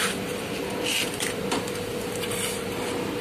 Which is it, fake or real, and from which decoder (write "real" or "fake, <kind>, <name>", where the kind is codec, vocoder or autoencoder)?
real